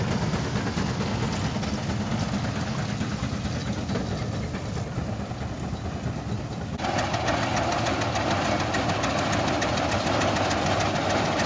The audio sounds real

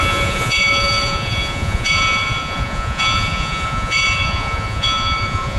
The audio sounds fake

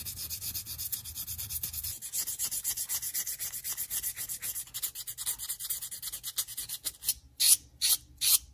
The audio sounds real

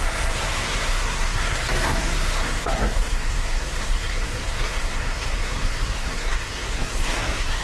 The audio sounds fake